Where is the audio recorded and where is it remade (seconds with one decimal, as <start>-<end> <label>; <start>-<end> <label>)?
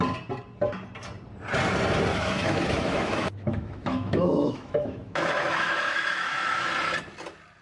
0.0-2.1 recorded; 2.1-6.7 remade; 6.7-7.6 recorded